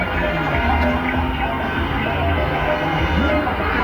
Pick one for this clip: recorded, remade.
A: recorded